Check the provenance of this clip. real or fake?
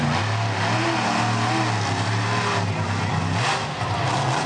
real